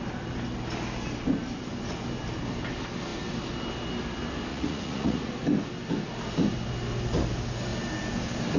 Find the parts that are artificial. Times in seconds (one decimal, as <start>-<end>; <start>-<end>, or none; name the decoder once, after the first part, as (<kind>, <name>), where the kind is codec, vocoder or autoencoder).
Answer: 4.5-5.3 (vocoder, Vocos)

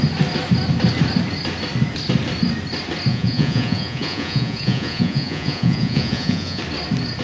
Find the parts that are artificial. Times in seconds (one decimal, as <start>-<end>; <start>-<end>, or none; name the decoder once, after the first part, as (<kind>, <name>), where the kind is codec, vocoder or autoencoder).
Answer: 3.1-6.6 (vocoder, Vocos)

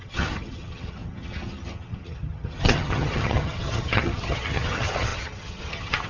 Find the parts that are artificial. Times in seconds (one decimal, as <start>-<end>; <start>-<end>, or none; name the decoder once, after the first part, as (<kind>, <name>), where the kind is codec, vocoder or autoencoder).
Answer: 0.0-6.1 (vocoder, HiFi-GAN)

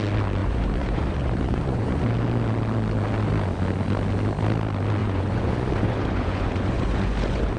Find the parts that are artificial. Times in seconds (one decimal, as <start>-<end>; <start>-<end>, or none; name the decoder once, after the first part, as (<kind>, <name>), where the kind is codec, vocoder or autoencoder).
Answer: 0.4-2.1 (vocoder, Vocos); 5.0-7.6

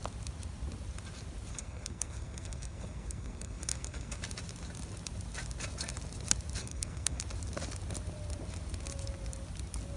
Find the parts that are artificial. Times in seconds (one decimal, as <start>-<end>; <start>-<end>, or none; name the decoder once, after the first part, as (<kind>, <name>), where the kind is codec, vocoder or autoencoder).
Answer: 1.5-4.2 (codec, SNAC); 6.6-7.2